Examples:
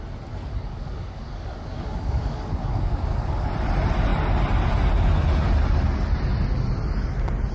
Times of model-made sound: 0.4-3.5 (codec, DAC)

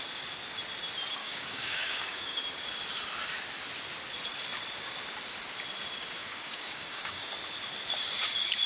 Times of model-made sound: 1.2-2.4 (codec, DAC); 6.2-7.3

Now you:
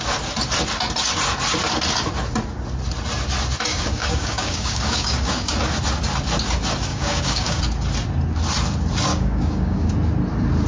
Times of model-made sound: 3.7-5.5 (codec, DAC); 6.9-7.6; 9.1-9.9